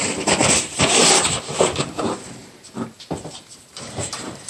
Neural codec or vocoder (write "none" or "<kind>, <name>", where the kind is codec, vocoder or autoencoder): vocoder, BigVGAN v2